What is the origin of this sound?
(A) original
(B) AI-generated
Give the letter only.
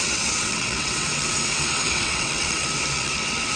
B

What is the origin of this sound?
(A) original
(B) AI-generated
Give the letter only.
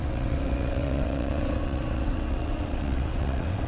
B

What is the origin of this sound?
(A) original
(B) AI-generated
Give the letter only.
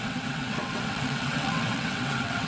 B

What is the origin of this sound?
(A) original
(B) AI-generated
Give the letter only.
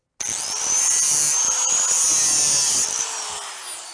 A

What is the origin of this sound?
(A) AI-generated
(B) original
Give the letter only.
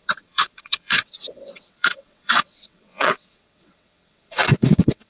A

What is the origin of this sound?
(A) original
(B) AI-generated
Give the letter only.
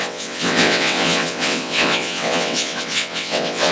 B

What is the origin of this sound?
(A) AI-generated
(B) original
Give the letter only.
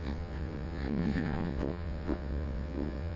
A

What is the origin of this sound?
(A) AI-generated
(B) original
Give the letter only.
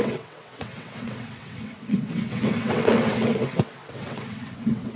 A